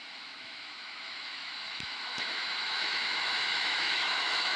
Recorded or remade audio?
remade